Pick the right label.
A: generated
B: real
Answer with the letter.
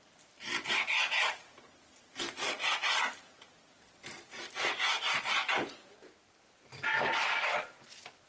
B